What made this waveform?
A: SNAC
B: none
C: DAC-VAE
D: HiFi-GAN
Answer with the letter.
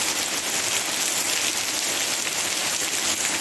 B